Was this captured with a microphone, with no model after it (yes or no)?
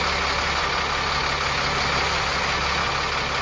yes